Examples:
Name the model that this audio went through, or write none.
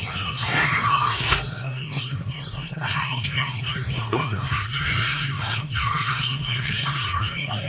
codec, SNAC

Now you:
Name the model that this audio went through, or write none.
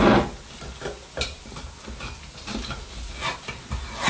none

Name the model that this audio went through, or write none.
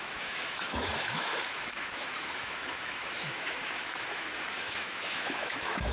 autoencoder, DAC-VAE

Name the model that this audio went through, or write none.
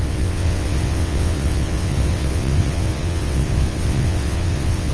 vocoder, WaveNeXt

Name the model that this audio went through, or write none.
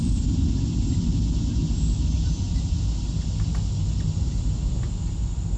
none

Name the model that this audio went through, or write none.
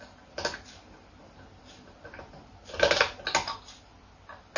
none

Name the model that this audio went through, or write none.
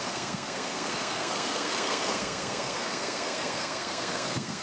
codec, SNAC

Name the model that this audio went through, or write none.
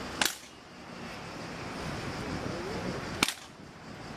none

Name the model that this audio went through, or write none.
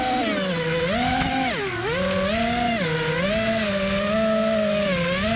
none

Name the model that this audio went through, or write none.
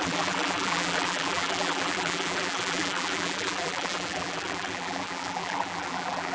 vocoder, BigVGAN v2